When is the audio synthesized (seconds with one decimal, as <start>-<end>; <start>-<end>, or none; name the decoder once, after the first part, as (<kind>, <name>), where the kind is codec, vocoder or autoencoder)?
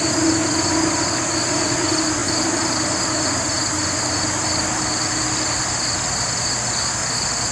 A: none